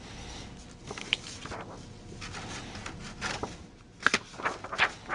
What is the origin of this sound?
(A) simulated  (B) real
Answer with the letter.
B